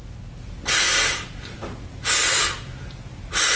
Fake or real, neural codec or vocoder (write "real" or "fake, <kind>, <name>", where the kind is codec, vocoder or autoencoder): real